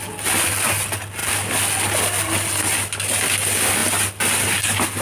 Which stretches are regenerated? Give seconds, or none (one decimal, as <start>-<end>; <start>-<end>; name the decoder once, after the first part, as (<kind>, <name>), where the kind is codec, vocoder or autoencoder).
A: 1.2-2.8 (vocoder, BigVGAN v2); 3.8-5.0